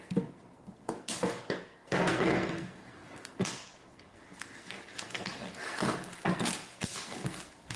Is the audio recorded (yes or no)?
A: no